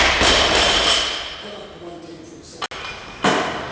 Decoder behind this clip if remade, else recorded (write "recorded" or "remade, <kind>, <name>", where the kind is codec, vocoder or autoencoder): recorded